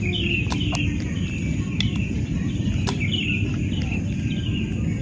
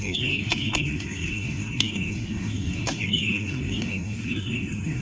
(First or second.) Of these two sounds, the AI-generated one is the second